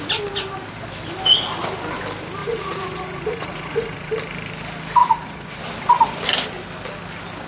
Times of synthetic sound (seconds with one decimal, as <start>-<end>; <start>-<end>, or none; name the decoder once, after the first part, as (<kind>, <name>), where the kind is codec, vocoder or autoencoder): 2.4-4.1 (vocoder, Vocos); 5.0-5.6